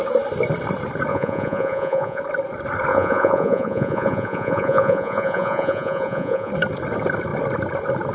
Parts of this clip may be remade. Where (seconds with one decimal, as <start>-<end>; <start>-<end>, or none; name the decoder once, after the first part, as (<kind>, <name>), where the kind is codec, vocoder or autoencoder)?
1.1-2.2 (vocoder, Vocos); 2.9-6.5